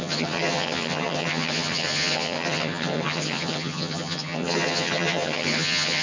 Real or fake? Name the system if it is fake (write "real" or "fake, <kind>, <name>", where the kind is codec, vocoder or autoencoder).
fake, vocoder, HiFi-GAN